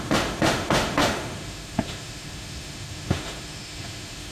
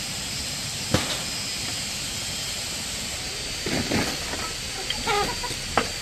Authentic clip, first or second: second